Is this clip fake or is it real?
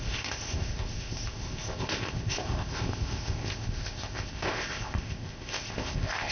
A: fake